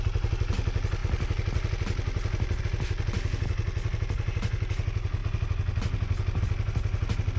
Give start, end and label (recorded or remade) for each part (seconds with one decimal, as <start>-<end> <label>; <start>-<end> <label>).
0.0-7.4 recorded